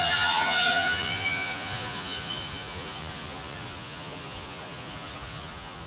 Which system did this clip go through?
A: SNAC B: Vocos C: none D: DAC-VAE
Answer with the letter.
B